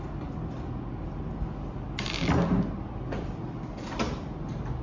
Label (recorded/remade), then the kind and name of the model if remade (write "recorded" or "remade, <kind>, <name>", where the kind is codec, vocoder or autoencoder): recorded